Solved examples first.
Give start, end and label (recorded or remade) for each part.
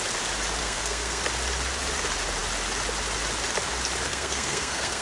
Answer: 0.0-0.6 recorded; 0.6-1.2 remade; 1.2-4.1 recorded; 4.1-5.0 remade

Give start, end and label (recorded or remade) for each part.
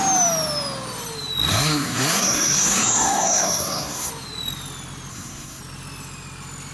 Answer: 0.0-1.5 recorded; 1.5-4.1 remade; 4.1-5.1 recorded; 5.1-5.6 remade; 5.6-6.7 recorded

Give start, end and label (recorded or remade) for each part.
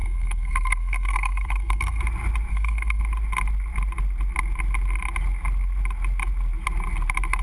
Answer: 0.0-2.0 remade; 2.0-2.5 recorded; 2.5-3.0 remade; 3.0-7.4 recorded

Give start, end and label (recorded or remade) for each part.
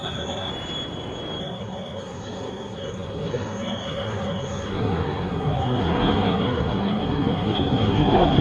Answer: 0.0-0.5 remade; 0.5-1.4 recorded; 1.4-8.4 remade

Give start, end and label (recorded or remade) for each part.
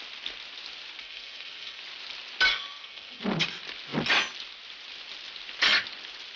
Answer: 0.0-1.0 recorded; 1.0-1.8 remade; 1.8-2.5 recorded; 2.5-3.2 remade; 3.2-6.4 recorded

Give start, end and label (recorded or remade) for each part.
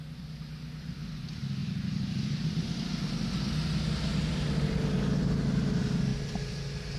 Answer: 0.0-7.0 recorded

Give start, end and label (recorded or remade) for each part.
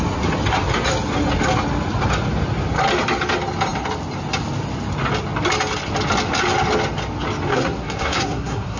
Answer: 0.0-7.5 recorded; 7.5-8.8 remade